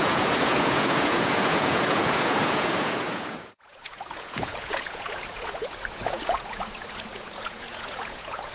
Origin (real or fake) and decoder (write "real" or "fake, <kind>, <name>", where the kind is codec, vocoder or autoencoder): fake, vocoder, Vocos